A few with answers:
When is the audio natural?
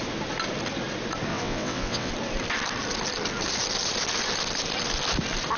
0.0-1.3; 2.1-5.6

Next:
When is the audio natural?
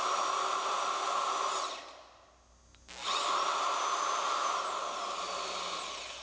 0.0-6.2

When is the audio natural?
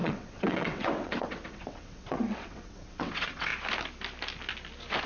3.5-5.1